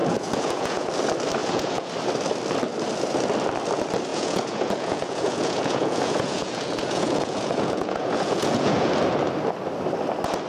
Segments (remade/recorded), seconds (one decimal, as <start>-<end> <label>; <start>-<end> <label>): 0.0-0.9 remade; 0.9-1.4 recorded; 1.4-1.9 remade; 1.9-4.1 recorded; 4.1-8.9 remade; 8.9-10.5 recorded

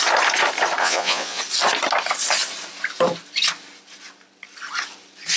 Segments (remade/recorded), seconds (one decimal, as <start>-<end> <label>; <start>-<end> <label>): 0.0-0.8 recorded; 0.8-1.4 remade; 1.4-5.4 recorded

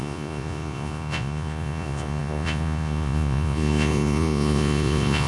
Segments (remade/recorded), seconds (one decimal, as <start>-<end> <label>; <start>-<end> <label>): 0.0-5.3 remade

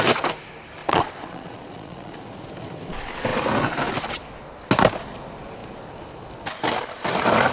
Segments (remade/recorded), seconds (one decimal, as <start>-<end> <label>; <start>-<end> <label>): 0.0-0.8 recorded; 0.8-2.2 remade; 2.2-7.5 recorded

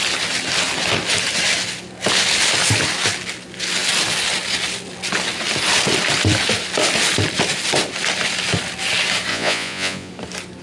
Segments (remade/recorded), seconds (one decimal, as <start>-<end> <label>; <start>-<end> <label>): 0.0-9.3 recorded; 9.3-10.1 remade; 10.1-10.6 recorded